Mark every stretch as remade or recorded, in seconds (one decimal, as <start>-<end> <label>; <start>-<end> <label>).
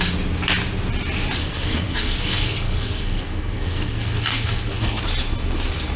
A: 0.0-1.4 recorded; 1.4-5.0 remade; 5.0-6.0 recorded